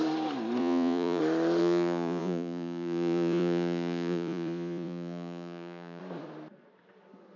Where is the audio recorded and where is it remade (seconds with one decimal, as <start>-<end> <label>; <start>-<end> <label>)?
0.0-0.6 recorded; 0.6-1.2 remade; 1.2-1.6 recorded; 1.6-6.0 remade; 6.0-7.4 recorded